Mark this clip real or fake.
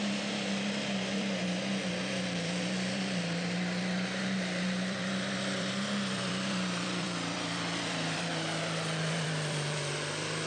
fake